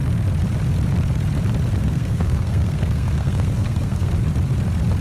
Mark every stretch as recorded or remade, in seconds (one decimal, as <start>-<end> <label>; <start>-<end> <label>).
0.0-1.8 recorded; 1.8-4.1 remade; 4.1-5.0 recorded